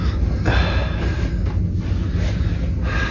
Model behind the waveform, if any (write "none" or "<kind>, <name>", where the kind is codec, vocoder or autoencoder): none